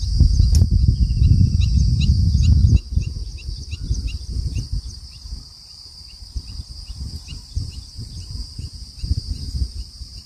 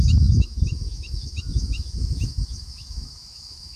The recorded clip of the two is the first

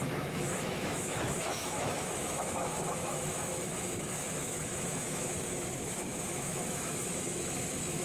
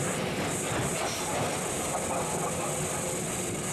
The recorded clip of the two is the second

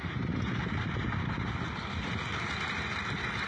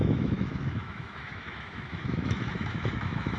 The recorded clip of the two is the first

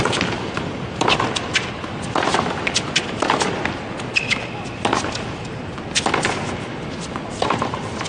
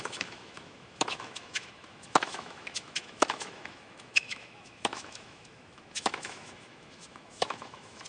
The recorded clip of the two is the first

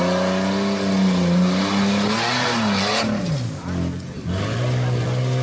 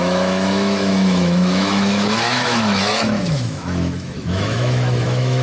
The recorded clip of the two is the first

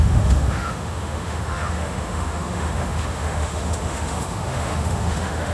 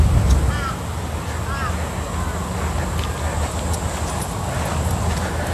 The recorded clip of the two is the second